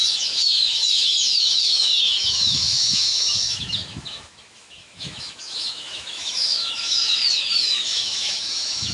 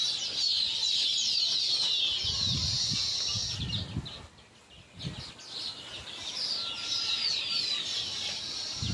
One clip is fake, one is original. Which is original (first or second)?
second